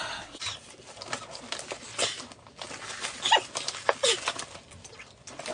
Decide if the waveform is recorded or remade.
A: recorded